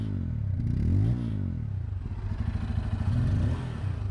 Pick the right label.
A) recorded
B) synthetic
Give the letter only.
A